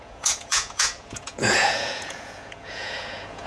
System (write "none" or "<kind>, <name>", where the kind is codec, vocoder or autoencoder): vocoder, Vocos